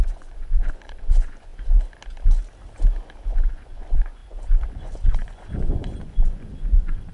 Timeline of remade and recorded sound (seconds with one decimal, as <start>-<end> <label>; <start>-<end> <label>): 0.0-1.5 remade; 1.5-3.5 recorded; 3.5-7.1 remade